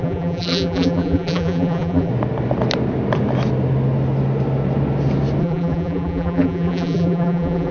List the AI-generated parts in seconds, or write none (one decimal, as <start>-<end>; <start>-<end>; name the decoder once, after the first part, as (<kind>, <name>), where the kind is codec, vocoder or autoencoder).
0.0-2.1 (vocoder, BigVGAN v2); 5.4-7.7